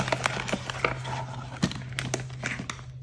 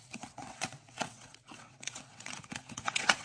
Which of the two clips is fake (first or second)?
second